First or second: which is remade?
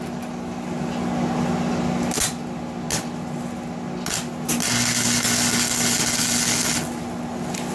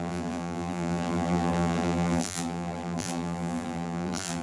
second